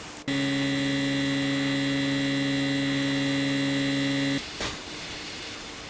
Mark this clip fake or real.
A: real